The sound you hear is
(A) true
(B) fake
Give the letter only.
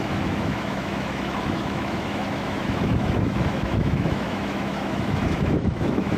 B